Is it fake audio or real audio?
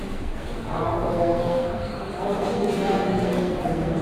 fake